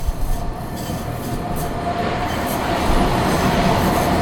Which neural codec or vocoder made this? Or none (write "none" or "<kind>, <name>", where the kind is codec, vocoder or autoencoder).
none